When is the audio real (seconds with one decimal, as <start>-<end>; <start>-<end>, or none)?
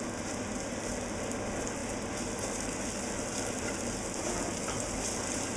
0.0-5.6